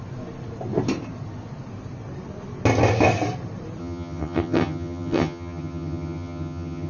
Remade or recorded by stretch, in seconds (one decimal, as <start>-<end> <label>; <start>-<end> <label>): 0.0-3.8 recorded; 3.8-6.9 remade